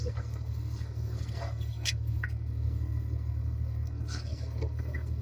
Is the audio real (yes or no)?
no